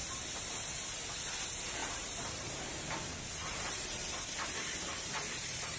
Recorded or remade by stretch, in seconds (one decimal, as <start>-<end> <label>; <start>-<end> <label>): 0.0-1.2 remade; 1.2-1.8 recorded; 1.8-2.6 remade; 2.6-3.4 recorded; 3.4-5.8 remade